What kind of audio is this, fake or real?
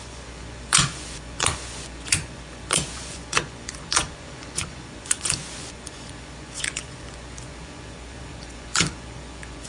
fake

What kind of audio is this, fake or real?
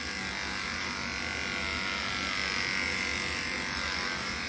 real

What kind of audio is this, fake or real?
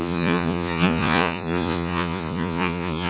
fake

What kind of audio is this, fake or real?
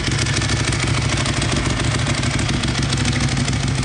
real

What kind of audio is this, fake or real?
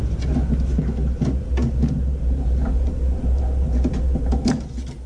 real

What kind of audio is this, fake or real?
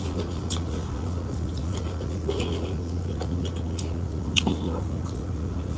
fake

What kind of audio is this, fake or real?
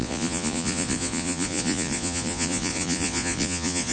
fake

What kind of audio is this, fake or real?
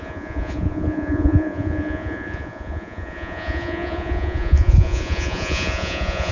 fake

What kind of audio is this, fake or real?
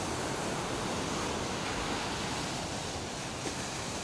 real